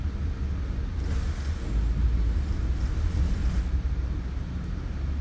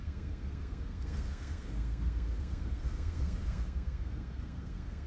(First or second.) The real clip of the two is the first